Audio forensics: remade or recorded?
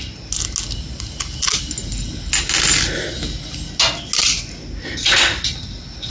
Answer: recorded